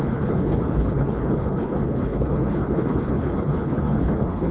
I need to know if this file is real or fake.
fake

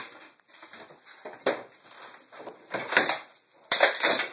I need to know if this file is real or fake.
real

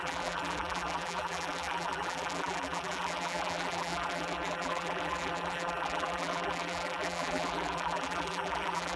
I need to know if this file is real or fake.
fake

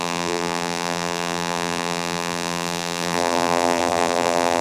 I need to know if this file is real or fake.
fake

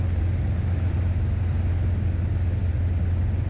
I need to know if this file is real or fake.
real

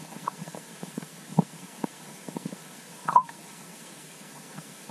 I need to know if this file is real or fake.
fake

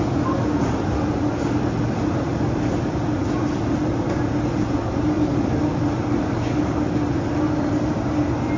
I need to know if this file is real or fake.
real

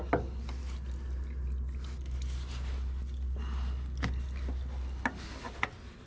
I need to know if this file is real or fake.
real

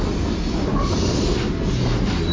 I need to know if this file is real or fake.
real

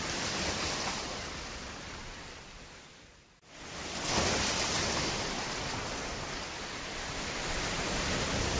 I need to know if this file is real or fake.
real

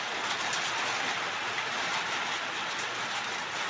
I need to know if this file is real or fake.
real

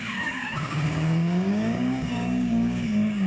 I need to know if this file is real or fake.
fake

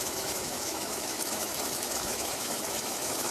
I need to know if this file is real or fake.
fake